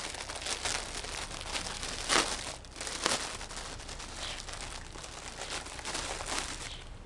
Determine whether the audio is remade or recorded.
recorded